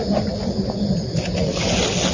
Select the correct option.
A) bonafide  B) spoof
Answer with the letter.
A